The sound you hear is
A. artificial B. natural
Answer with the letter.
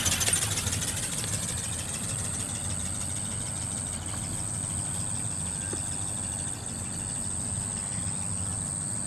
B